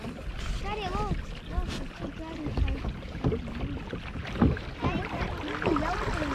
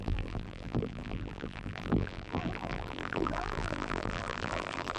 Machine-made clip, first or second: second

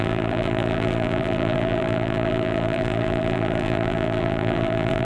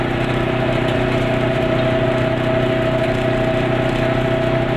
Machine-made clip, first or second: first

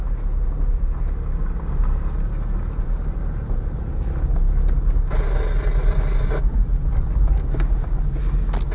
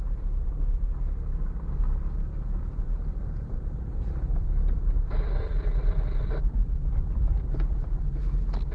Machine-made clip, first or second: second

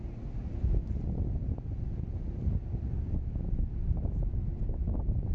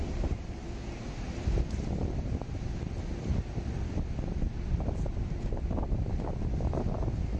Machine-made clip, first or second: second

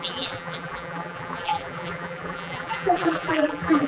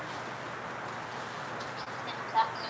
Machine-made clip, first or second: first